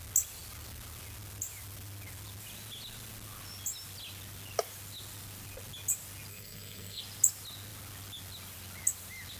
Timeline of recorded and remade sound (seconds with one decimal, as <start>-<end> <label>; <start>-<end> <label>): 0.0-6.3 recorded; 6.3-7.0 remade; 7.0-9.4 recorded